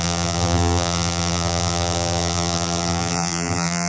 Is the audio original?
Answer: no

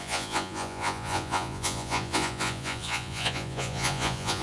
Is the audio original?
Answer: no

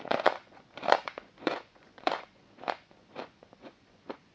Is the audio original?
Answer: no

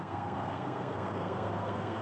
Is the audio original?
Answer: no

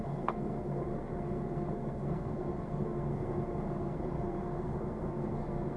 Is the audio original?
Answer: no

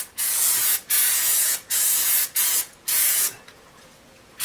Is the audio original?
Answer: no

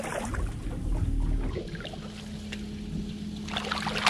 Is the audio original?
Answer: yes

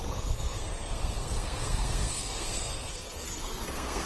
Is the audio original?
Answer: no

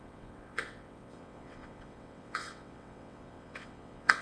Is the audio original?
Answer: no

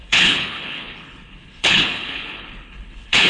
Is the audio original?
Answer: no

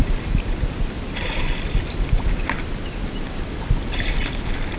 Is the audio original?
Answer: yes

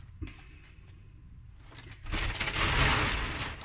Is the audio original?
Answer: yes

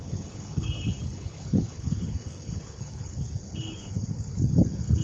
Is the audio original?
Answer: no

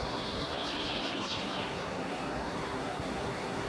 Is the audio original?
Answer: no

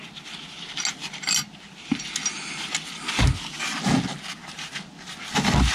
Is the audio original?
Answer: yes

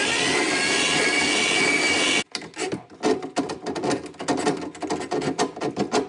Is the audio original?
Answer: yes